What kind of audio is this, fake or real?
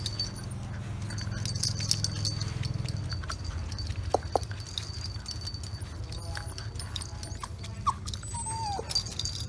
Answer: real